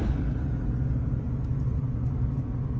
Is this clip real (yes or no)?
yes